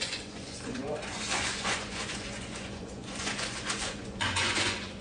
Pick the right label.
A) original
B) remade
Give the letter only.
B